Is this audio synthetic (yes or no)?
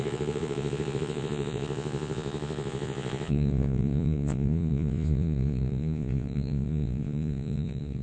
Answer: yes